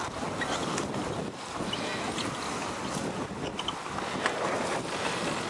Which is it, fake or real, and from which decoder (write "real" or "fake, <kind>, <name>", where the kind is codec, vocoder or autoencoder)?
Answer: real